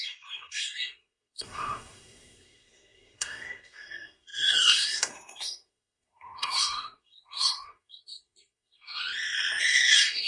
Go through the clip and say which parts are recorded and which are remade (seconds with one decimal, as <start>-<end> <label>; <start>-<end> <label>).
0.0-9.0 remade; 9.0-9.6 recorded; 9.6-10.3 remade